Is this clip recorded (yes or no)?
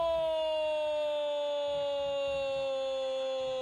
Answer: yes